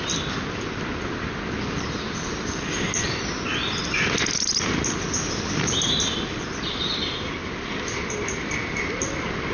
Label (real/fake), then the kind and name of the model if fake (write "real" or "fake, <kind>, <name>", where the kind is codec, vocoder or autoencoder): real